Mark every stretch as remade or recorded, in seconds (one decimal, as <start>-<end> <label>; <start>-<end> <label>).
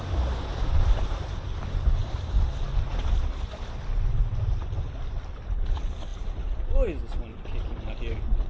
0.0-0.5 recorded; 0.5-1.4 remade; 1.4-2.0 recorded; 2.0-3.5 remade; 3.5-8.5 recorded